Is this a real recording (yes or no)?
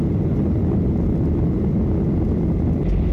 yes